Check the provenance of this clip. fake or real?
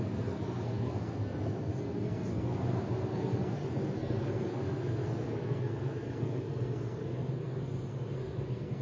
fake